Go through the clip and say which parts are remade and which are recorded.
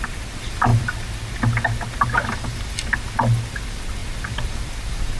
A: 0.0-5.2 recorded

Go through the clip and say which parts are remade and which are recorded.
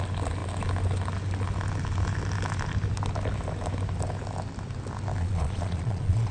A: 0.0-5.2 recorded; 5.2-6.3 remade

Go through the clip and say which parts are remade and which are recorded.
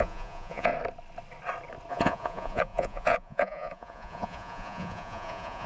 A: 0.0-0.7 remade; 0.7-1.9 recorded; 1.9-5.7 remade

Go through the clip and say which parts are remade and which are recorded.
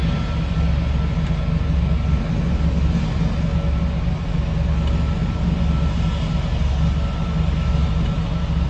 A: 0.0-8.7 recorded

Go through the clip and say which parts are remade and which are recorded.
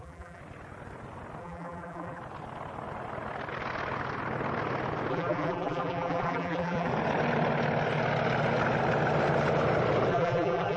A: 0.0-0.4 remade; 0.4-1.4 recorded; 1.4-2.2 remade; 2.2-5.1 recorded; 5.1-6.9 remade; 6.9-10.1 recorded; 10.1-10.8 remade